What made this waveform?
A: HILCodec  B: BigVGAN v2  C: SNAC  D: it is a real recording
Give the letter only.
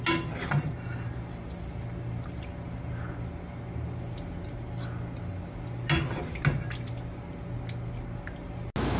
D